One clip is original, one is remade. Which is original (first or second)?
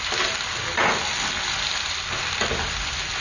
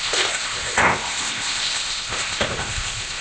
first